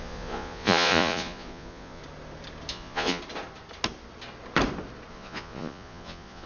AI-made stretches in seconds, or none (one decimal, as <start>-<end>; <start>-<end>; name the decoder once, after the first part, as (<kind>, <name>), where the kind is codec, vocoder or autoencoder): 0.0-2.0 (vocoder, Vocos); 2.7-3.2; 5.1-6.5